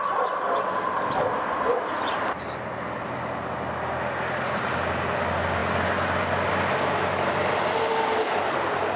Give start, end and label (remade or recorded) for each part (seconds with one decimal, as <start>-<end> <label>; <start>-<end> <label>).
0.0-9.0 recorded